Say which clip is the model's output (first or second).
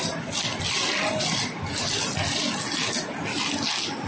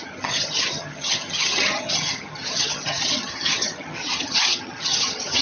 second